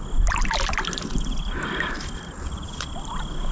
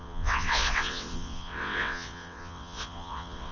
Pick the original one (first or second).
first